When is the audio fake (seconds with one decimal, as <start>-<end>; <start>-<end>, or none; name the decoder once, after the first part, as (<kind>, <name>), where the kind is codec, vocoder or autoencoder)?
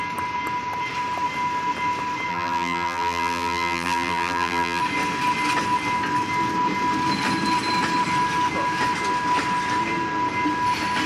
2.3-4.8 (vocoder, BigVGAN v2)